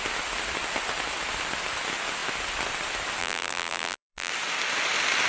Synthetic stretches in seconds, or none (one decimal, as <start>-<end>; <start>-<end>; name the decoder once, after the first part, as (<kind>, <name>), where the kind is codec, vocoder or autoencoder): 3.2-4.3 (vocoder, BigVGAN v2)